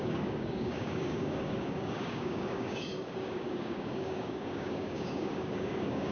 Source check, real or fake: fake